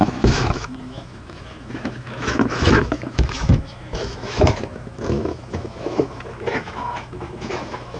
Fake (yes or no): yes